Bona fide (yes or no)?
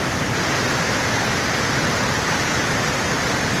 no